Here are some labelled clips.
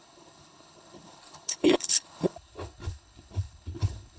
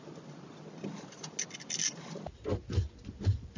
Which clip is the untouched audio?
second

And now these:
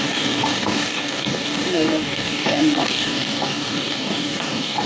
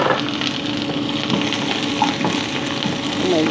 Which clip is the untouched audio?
second